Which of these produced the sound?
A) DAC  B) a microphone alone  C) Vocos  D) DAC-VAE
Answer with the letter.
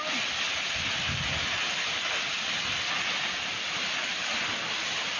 B